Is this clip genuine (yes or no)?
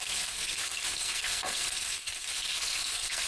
no